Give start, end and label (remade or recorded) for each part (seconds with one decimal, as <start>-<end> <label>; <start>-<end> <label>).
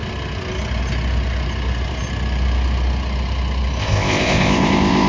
0.0-3.8 recorded; 3.8-5.1 remade